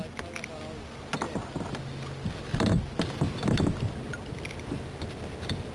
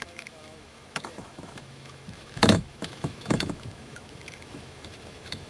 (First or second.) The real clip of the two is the first